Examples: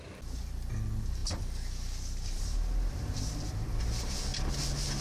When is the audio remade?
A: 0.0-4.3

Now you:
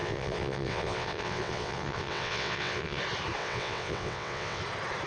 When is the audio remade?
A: 0.0-3.0; 3.4-4.6

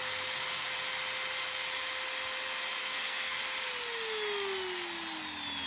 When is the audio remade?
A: 2.8-3.4

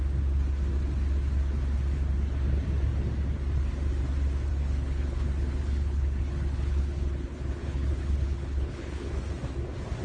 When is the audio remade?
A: 4.5-9.2

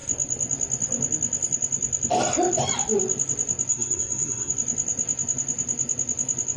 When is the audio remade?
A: 3.7-4.5

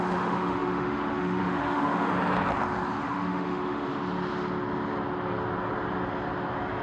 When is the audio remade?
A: 0.0-2.1; 3.0-3.9

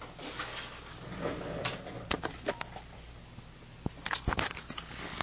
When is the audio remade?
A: 1.6-3.2

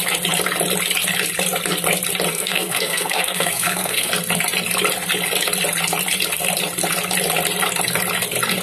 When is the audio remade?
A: 2.3-4.1